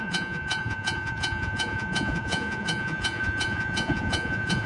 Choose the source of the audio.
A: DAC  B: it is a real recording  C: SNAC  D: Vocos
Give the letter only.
D